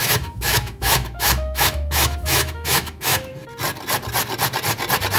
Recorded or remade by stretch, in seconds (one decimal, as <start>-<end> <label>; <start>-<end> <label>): 0.0-3.3 remade; 3.3-5.2 recorded